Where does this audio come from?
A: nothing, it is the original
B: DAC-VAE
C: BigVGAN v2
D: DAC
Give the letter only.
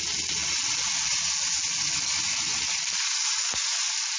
A